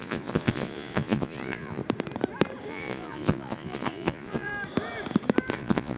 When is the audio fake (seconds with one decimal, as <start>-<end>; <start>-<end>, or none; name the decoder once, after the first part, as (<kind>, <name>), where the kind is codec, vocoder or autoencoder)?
0.0-1.8 (vocoder, Vocos); 2.7-4.5; 5.5-6.0